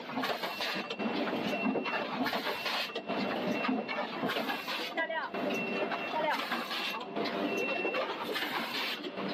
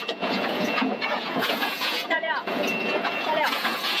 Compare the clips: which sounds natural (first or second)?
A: first